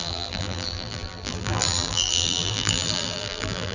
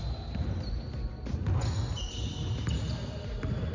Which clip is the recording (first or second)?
second